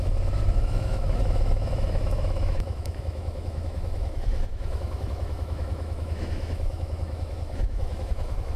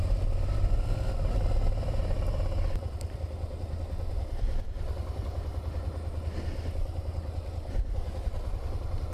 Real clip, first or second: second